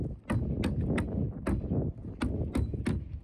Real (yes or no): yes